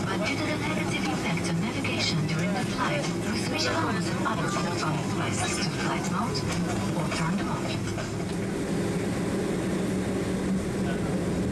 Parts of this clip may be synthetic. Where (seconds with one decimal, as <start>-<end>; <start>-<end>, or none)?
none